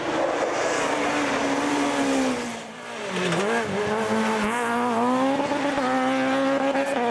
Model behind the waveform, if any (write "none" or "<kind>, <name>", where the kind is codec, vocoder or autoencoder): none